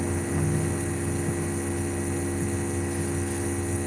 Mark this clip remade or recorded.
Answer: recorded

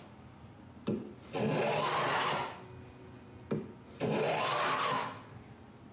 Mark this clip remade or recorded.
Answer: recorded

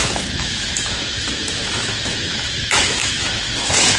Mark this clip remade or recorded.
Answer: remade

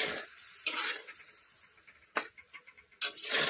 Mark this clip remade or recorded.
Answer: recorded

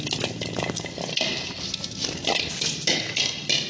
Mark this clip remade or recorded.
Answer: recorded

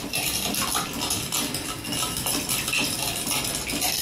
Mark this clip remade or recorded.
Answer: recorded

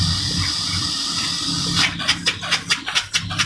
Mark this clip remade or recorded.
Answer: recorded